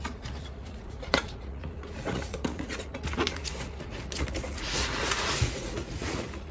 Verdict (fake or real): fake